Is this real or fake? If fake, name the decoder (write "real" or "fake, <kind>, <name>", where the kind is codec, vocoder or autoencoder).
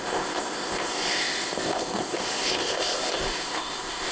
fake, codec, ZipCodec